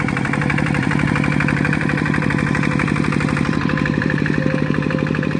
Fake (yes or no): yes